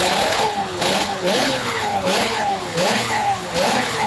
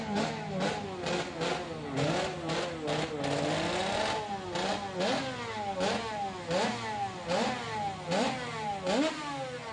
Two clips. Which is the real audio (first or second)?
second